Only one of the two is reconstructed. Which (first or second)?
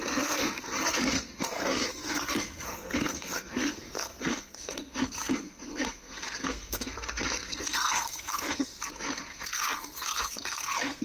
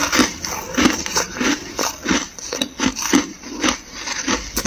first